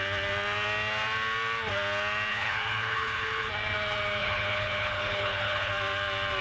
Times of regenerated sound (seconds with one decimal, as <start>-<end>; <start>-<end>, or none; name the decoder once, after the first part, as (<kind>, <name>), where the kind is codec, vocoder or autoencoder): 2.3-3.5 (codec, HILCodec); 4.2-5.7